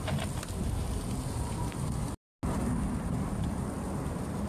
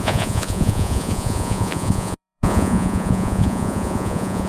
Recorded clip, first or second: first